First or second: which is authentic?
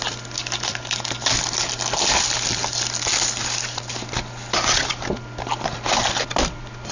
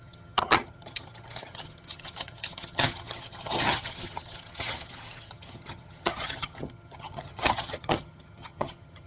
first